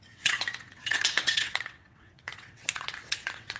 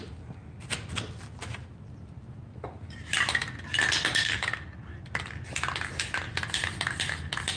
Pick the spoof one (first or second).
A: first